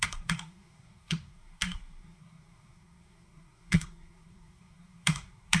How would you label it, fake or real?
fake